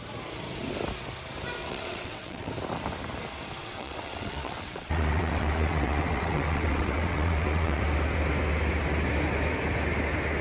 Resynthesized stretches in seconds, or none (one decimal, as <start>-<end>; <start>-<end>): 1.6-2.5; 3.6-7.8